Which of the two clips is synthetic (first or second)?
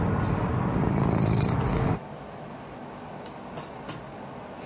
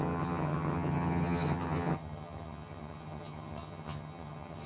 second